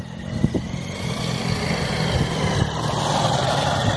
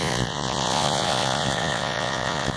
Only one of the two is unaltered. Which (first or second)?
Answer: first